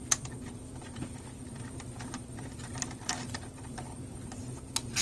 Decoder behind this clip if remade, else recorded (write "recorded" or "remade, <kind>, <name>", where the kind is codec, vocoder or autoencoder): remade, vocoder, BigVGAN v2